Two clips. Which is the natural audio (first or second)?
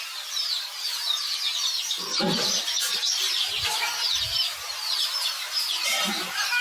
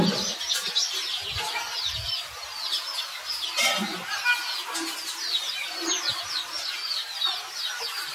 second